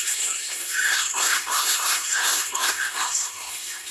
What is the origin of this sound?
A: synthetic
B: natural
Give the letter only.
A